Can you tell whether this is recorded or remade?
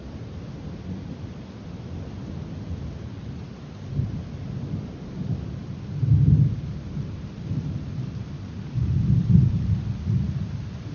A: recorded